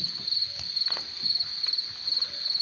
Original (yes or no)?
yes